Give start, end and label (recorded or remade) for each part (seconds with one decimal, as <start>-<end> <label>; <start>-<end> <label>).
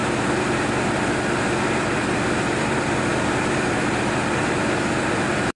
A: 0.0-1.7 recorded; 1.7-5.6 remade